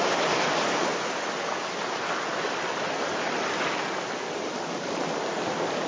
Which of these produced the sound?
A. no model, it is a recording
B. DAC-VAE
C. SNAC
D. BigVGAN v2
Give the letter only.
A